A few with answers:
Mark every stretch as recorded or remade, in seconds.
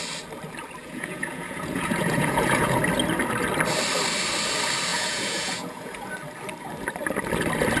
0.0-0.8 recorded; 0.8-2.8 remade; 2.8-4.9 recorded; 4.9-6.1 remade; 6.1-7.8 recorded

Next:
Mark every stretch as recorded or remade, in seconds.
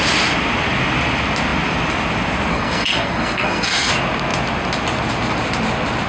0.0-2.5 recorded; 2.5-3.9 remade; 3.9-6.1 recorded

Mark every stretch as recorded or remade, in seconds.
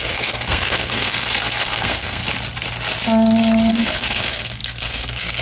0.0-2.2 remade; 2.2-3.7 recorded; 3.7-5.4 remade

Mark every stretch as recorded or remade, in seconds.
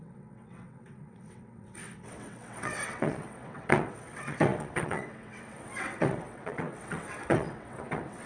0.0-8.3 remade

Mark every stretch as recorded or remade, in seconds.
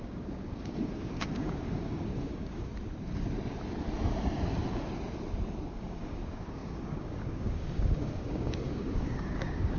0.0-2.7 remade; 2.7-5.7 recorded; 5.7-9.8 remade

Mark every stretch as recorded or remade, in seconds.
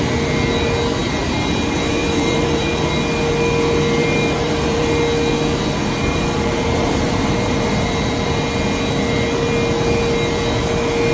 0.0-2.0 recorded; 2.0-2.9 remade; 2.9-4.0 recorded; 4.0-4.9 remade; 4.9-6.1 recorded; 6.1-8.3 remade; 8.3-11.1 recorded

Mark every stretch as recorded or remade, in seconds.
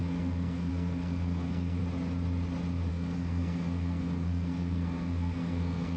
0.0-1.8 remade; 1.8-2.9 recorded; 2.9-6.0 remade